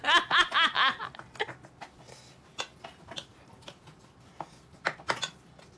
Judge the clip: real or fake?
real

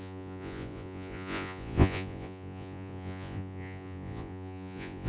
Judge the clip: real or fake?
fake